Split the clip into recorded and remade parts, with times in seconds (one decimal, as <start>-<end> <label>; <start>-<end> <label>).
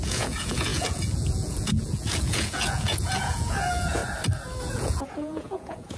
0.0-4.0 remade; 4.0-4.6 recorded; 4.6-6.0 remade